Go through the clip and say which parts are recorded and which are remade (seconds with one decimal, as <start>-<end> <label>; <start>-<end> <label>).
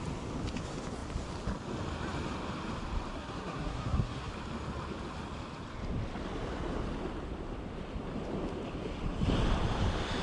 0.0-3.1 recorded; 3.1-4.3 remade; 4.3-10.2 recorded